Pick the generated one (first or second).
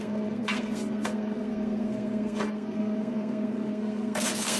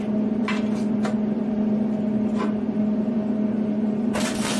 first